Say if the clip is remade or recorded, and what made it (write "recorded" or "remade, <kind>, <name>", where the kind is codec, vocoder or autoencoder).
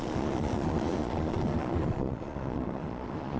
remade, vocoder, Vocos